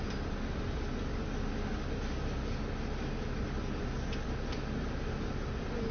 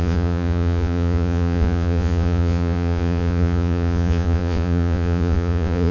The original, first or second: first